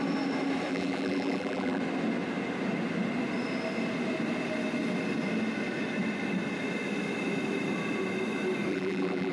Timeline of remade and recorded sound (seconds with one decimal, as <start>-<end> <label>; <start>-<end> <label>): 0.0-0.7 recorded; 0.7-1.8 remade; 1.8-8.7 recorded; 8.7-9.3 remade

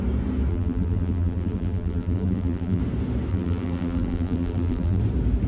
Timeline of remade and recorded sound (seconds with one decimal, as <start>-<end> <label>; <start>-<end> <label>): 0.0-0.5 recorded; 0.5-2.8 remade; 2.8-3.3 recorded; 3.3-5.0 remade; 5.0-5.5 recorded

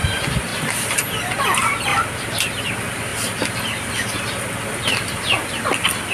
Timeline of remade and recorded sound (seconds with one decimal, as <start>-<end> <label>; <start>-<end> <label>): 0.0-0.5 recorded; 0.5-1.0 remade; 1.0-1.9 recorded; 1.9-2.7 remade; 2.7-3.1 recorded; 3.1-3.9 remade; 3.9-6.1 recorded

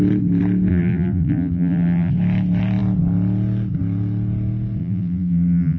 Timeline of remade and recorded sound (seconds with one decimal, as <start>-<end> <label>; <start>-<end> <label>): 0.0-0.7 recorded; 0.7-2.1 remade; 2.1-4.8 recorded; 4.8-5.8 remade

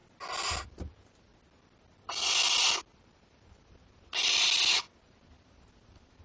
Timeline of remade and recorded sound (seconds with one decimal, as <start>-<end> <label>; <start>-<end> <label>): 0.0-0.9 recorded; 0.9-1.3 remade; 1.3-2.9 recorded; 2.9-4.1 remade; 4.1-4.7 recorded; 4.7-6.2 remade

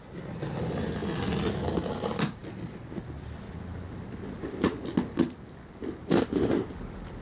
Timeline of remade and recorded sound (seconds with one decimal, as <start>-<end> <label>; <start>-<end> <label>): 0.0-7.2 recorded